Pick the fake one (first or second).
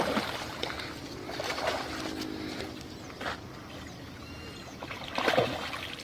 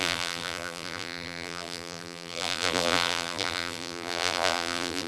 second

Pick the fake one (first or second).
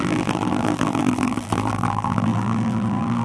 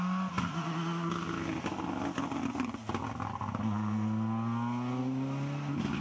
first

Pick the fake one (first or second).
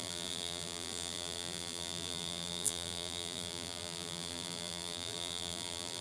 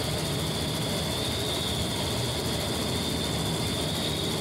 first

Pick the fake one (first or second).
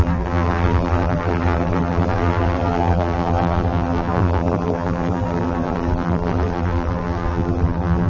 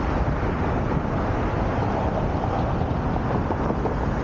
first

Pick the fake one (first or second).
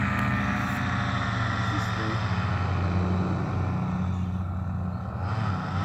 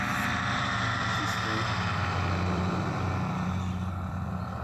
second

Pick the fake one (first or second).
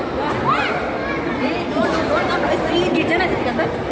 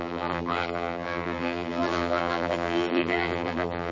second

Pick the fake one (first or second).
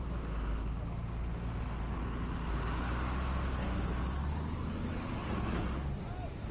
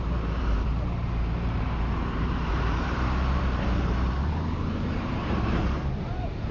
second